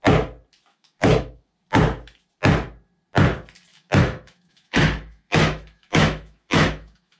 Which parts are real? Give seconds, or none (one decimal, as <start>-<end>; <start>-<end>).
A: 0.0-0.7; 1.5-3.7